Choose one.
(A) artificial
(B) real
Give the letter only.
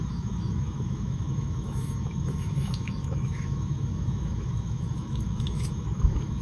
A